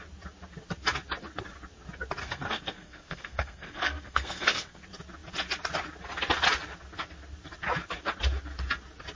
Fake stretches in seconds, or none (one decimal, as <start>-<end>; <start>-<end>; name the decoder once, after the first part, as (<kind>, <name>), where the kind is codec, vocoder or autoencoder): 2.2-4.8 (codec, SNAC)